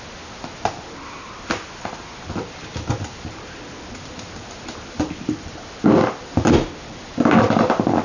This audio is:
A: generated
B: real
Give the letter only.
B